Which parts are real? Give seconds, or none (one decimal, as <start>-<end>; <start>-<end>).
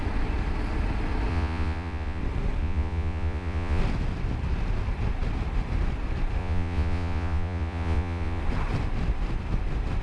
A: 0.0-1.3; 2.2-2.6; 3.8-6.4; 8.4-10.0